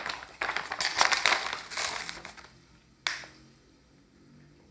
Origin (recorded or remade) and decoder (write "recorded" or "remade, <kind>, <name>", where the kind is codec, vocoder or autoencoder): recorded